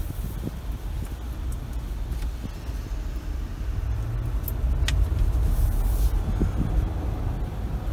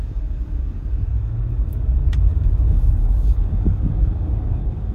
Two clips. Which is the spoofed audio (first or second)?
second